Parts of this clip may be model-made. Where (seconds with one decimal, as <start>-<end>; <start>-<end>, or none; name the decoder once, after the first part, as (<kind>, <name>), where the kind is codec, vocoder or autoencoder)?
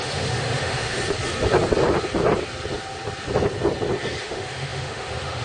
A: 0.0-1.0 (autoencoder, DAC-VAE); 4.2-5.4